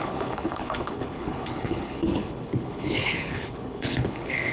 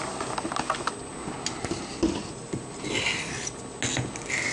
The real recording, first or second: second